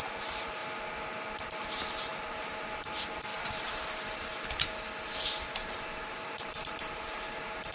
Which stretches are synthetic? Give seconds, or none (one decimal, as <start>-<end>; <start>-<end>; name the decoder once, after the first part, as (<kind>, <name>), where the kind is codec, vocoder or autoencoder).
0.0-0.6 (vocoder, BigVGAN v2); 1.7-4.7; 5.5-7.7